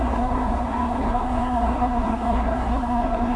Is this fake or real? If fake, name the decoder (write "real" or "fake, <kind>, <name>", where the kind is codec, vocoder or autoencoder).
fake, codec, SNAC